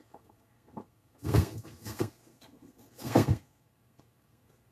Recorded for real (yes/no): no